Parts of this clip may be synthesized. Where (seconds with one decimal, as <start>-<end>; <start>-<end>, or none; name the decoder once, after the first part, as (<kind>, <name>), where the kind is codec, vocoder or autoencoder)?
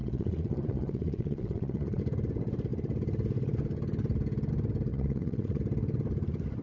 0.0-2.0 (vocoder, Vocos); 4.9-5.6